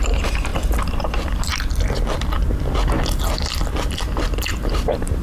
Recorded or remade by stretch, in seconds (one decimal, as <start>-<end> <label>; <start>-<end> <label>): 0.0-1.5 remade; 1.5-4.6 recorded; 4.6-5.2 remade